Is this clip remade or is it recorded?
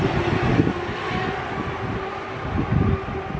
recorded